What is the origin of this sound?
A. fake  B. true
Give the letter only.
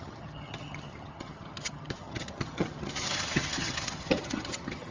A